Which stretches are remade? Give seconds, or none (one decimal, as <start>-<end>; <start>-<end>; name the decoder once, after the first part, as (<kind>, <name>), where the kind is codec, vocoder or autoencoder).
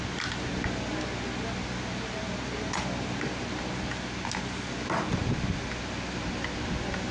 none